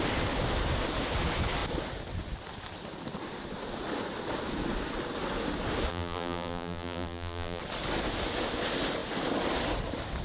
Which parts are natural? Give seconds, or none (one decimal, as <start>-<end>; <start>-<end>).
0.0-5.9; 7.6-10.2